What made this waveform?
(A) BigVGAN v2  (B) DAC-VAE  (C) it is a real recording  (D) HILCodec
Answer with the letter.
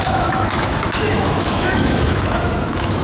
B